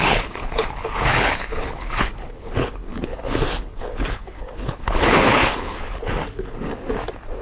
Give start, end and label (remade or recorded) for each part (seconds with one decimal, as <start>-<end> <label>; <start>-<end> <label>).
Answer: 0.0-6.7 remade; 6.7-7.4 recorded

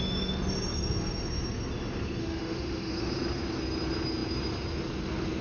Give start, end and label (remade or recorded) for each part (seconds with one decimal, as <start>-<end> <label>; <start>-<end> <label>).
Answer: 0.0-2.2 recorded; 2.2-2.9 remade; 2.9-5.4 recorded

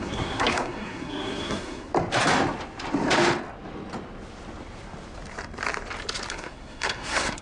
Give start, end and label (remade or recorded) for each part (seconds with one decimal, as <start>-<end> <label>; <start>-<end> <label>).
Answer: 0.0-1.9 remade; 1.9-6.3 recorded; 6.3-7.4 remade

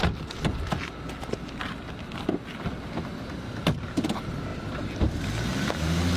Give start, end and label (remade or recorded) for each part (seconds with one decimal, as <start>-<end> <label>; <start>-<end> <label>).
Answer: 0.0-6.2 recorded

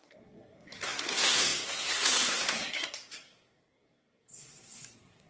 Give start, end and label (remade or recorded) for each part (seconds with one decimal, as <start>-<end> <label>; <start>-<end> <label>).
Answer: 0.0-5.3 remade